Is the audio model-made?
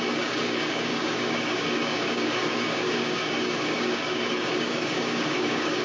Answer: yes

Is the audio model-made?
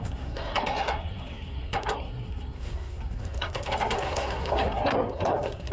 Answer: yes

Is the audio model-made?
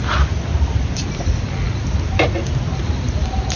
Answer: no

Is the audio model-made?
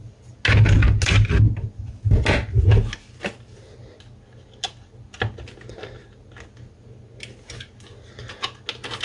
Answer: no